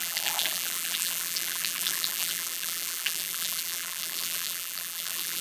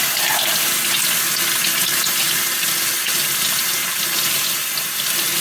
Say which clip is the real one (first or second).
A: second